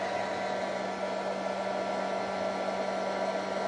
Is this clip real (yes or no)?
yes